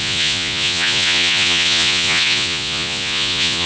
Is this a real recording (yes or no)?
no